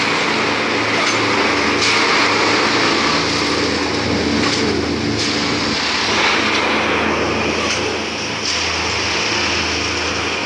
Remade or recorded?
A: recorded